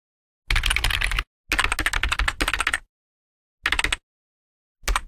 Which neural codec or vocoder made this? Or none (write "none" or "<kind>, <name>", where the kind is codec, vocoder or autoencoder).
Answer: none